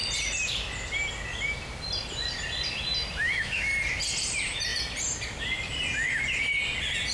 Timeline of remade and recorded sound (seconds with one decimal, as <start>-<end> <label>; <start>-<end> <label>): 0.0-3.2 recorded; 3.2-3.7 remade; 3.7-7.1 recorded